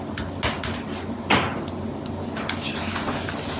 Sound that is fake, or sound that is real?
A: real